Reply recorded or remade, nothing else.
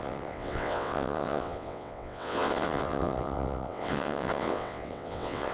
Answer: remade